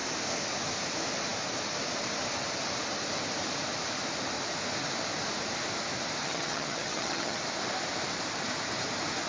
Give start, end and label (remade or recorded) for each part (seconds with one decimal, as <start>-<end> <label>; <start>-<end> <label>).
0.0-6.2 recorded; 6.2-7.4 remade; 7.4-9.3 recorded

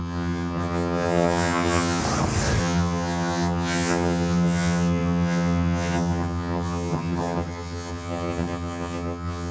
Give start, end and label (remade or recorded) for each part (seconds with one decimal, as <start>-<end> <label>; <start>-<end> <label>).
0.0-2.0 remade; 2.0-2.6 recorded; 2.6-9.5 remade

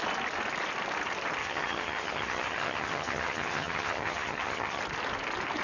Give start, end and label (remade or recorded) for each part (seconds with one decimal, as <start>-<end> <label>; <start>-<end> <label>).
0.0-1.4 recorded; 1.4-4.8 remade; 4.8-5.6 recorded

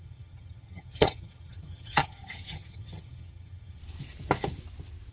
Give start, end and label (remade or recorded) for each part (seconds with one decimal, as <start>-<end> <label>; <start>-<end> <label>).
0.0-3.8 remade; 3.8-5.1 recorded

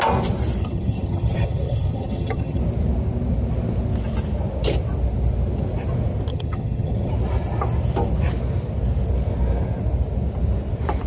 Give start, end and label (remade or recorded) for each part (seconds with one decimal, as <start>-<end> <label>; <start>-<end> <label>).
0.0-0.6 recorded; 0.6-2.6 remade; 2.6-6.3 recorded; 6.3-7.1 remade; 7.1-11.1 recorded

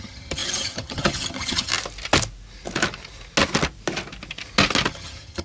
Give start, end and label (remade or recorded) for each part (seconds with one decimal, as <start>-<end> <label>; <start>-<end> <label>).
0.0-1.7 remade; 1.7-4.9 recorded; 4.9-5.4 remade

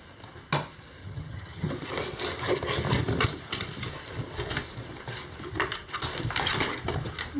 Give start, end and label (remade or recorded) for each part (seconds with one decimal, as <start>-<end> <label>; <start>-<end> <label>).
0.0-1.0 recorded; 1.0-1.7 remade; 1.7-7.4 recorded

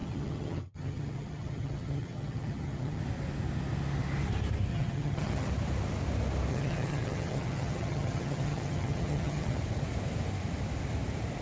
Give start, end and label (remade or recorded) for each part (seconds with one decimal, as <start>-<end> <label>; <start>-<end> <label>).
0.0-3.0 remade; 3.0-4.7 recorded; 4.7-5.5 remade; 5.5-6.5 recorded; 6.5-9.6 remade; 9.6-11.4 recorded